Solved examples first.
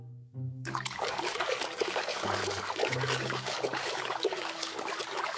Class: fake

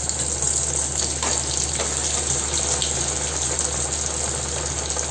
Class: real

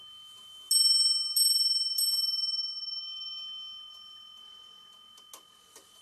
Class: real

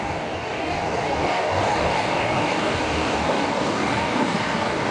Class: fake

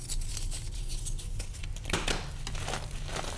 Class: real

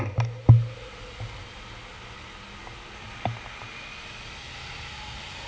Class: real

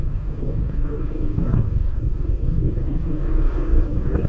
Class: fake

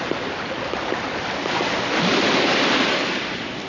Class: real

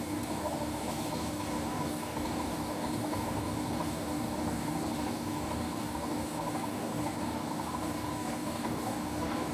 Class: fake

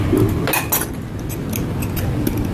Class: real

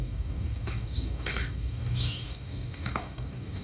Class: fake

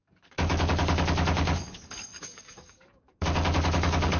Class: fake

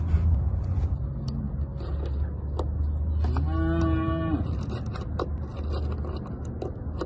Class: real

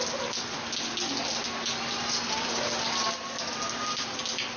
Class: real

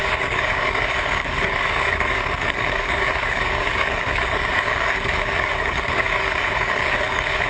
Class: fake